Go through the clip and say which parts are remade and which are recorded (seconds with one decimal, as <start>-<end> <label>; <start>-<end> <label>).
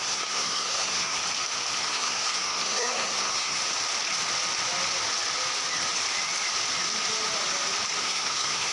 0.0-1.2 remade; 1.2-1.8 recorded; 1.8-3.6 remade; 3.6-8.0 recorded; 8.0-8.7 remade